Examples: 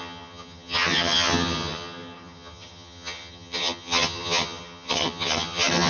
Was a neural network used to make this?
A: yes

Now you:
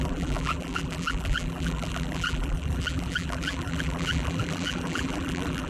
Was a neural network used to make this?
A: yes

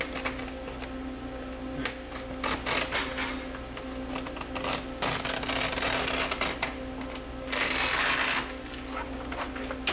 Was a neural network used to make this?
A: no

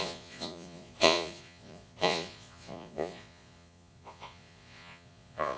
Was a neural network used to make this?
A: yes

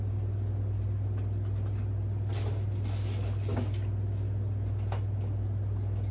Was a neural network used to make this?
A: no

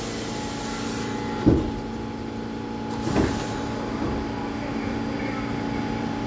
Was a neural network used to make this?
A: no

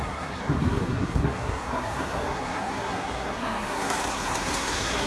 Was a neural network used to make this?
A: yes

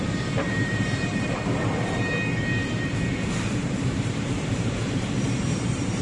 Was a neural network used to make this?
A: yes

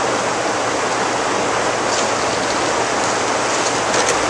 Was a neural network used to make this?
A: no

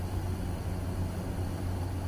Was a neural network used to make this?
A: no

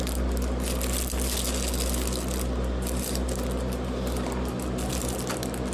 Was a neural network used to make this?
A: no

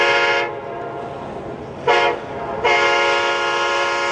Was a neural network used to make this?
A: no